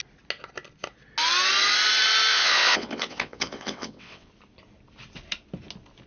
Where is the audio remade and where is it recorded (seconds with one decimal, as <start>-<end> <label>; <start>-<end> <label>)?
0.0-2.3 recorded; 2.3-4.3 remade; 4.3-6.1 recorded

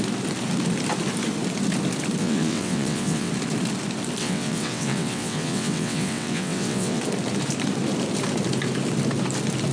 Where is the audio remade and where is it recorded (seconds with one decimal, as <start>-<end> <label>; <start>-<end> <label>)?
0.0-2.2 recorded; 2.2-3.3 remade; 3.3-4.2 recorded; 4.2-7.0 remade; 7.0-9.7 recorded

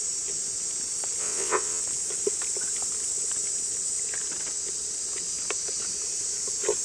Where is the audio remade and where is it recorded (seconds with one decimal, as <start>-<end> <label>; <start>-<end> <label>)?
0.0-1.2 recorded; 1.2-1.8 remade; 1.8-6.8 recorded

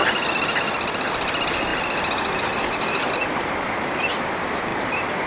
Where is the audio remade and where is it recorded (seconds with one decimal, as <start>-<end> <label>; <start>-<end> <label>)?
0.0-5.3 recorded

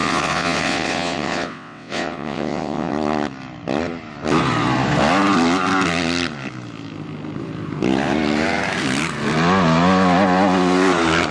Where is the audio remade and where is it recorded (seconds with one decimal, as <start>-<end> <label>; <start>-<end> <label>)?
0.0-2.9 remade; 2.9-11.3 recorded

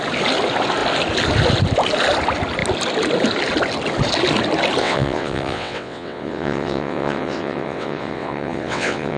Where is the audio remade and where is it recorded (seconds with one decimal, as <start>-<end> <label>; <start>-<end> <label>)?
0.0-4.8 recorded; 4.8-9.2 remade

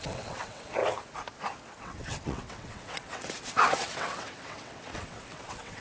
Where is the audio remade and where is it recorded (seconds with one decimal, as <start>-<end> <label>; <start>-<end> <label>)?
0.0-0.8 remade; 0.8-1.8 recorded; 1.8-5.8 remade

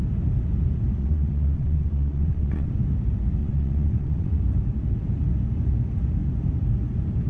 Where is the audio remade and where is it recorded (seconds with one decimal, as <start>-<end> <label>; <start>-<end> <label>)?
0.0-1.0 recorded; 1.0-2.7 remade; 2.7-3.4 recorded; 3.4-4.4 remade; 4.4-7.3 recorded